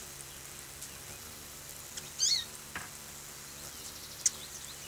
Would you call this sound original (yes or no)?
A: yes